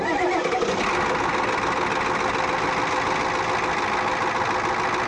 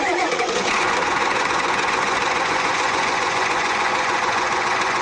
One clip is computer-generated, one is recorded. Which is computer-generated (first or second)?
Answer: second